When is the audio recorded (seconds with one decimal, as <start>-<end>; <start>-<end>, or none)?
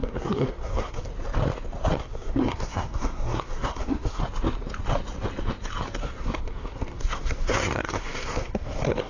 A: 1.1-2.0; 4.2-6.0